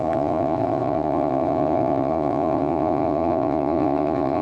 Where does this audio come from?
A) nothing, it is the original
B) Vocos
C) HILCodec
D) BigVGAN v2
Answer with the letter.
B